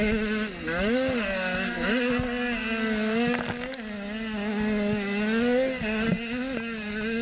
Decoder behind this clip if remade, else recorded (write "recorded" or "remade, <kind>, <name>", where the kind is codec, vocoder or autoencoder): recorded